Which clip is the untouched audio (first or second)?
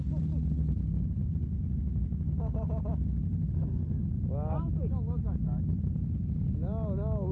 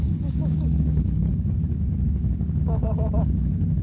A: first